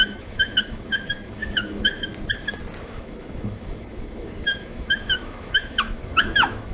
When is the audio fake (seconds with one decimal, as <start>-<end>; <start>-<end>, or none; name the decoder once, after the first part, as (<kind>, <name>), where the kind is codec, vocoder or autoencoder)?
0.0-2.1 (autoencoder, DAC-VAE); 2.8-6.7